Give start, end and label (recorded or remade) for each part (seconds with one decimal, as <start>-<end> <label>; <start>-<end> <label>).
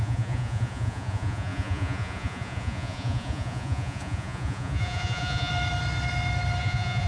0.0-5.5 remade; 5.5-6.6 recorded; 6.6-7.1 remade